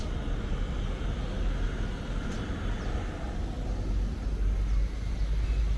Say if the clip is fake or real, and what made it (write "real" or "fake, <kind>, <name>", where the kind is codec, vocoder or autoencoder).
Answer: real